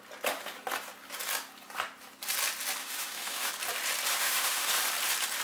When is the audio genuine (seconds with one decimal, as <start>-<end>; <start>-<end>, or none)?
0.0-2.8; 3.5-4.1; 4.7-5.4